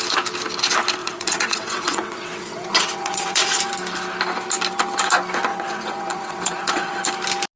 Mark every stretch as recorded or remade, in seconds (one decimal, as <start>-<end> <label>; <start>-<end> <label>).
0.0-1.0 recorded; 1.0-3.6 remade; 3.6-5.5 recorded; 5.5-7.0 remade; 7.0-7.6 recorded